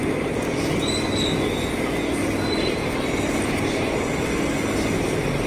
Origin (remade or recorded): recorded